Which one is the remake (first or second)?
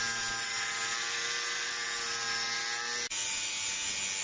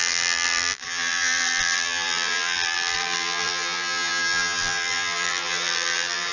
second